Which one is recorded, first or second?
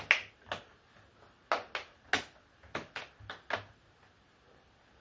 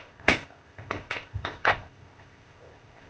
first